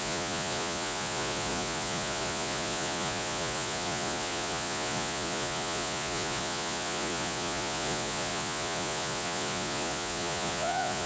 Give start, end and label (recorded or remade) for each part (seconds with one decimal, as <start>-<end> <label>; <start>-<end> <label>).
0.0-11.1 remade